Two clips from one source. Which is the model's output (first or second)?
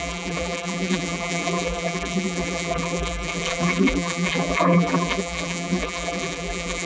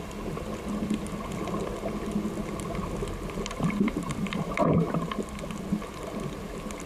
first